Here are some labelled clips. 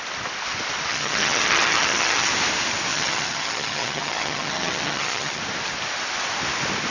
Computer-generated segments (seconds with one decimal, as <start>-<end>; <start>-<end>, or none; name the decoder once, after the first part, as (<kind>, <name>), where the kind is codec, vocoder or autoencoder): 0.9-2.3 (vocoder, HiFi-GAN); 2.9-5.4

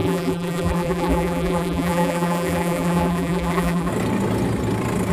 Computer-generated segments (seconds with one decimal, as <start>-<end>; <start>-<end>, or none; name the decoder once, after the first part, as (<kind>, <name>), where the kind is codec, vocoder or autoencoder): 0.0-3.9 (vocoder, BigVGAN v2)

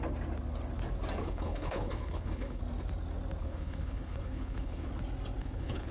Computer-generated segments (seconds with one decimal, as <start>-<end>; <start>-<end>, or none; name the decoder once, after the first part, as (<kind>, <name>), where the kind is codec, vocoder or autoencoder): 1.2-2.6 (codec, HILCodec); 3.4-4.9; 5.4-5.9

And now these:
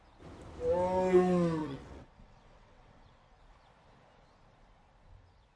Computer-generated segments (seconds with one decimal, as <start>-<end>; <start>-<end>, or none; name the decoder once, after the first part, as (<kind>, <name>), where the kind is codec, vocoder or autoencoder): 1.6-3.4 (vocoder, WaveNeXt)

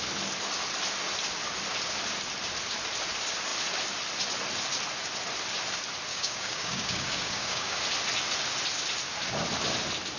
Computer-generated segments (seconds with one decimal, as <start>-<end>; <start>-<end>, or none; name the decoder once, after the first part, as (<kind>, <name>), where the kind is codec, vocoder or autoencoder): 6.1-7.7 (codec, DAC)

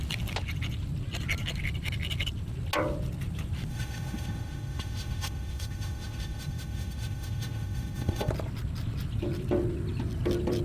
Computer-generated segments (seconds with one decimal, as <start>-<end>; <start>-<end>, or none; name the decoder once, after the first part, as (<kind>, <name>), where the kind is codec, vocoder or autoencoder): 3.7-8.3 (autoencoder, DAC-VAE)